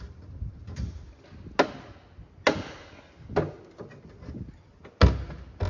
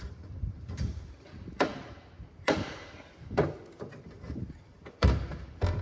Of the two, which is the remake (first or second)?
second